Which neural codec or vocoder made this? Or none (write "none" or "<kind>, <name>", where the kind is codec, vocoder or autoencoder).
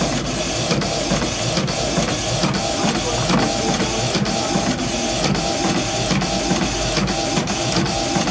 none